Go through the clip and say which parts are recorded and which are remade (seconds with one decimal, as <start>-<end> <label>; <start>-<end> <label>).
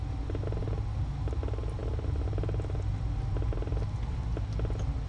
0.0-5.1 recorded